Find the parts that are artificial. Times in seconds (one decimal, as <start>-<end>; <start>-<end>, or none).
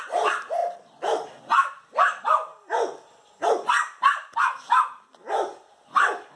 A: none